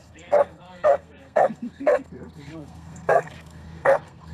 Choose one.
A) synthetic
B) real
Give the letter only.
A